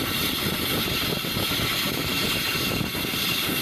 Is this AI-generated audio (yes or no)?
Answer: yes